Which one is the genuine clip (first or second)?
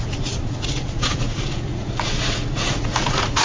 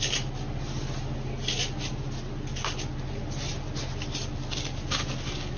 second